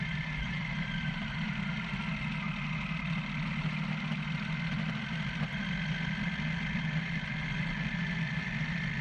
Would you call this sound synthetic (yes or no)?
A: no